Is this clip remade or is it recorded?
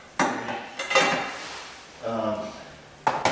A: recorded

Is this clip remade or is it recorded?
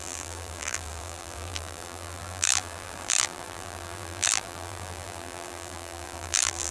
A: remade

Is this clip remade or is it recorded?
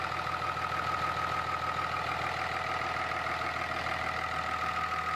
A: recorded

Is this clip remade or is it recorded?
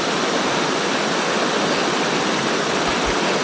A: recorded